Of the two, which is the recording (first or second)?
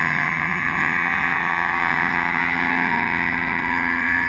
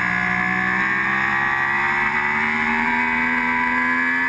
second